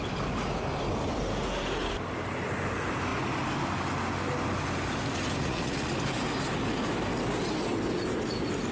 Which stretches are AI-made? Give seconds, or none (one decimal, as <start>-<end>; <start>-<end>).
5.4-5.9